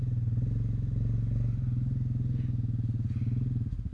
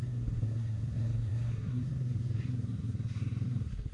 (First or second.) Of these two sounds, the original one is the first